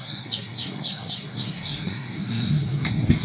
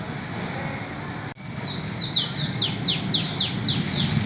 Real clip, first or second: second